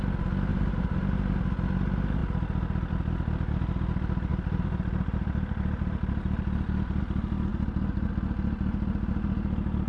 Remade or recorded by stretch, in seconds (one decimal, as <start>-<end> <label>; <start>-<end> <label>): 0.0-0.5 recorded; 0.5-1.4 remade; 1.4-4.3 recorded; 4.3-7.0 remade; 7.0-7.5 recorded; 7.5-8.1 remade; 8.1-9.9 recorded